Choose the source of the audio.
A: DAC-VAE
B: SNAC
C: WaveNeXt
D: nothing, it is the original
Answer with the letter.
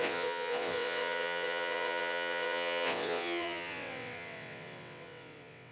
C